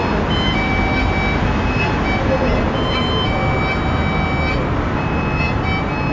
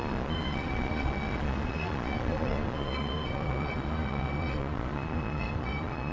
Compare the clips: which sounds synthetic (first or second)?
second